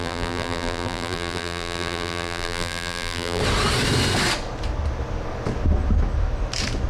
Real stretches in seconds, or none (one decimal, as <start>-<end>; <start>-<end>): 3.4-6.9